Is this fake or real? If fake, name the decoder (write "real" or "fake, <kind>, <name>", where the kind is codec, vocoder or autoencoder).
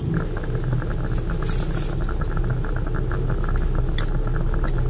real